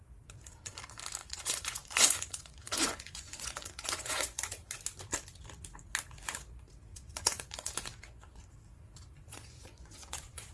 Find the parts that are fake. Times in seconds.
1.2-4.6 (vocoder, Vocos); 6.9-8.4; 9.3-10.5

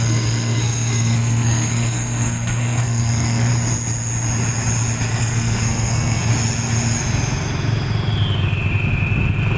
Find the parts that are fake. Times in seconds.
0.0-3.5 (codec, SNAC); 5.1-6.3

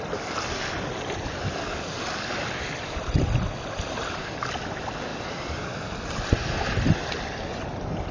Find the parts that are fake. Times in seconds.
5.1-6.1 (vocoder, BigVGAN v2)

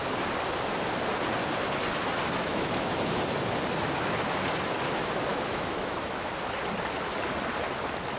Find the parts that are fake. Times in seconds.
2.4-3.1 (autoencoder, DAC-VAE); 5.3-6.3

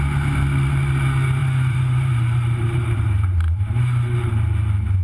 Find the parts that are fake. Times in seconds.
1.4-4.3 (vocoder, BigVGAN v2)

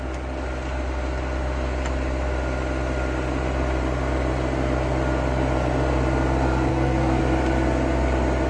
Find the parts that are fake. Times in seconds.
6.7-7.2 (codec, SNAC)